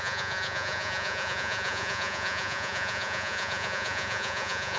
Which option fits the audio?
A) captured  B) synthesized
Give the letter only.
B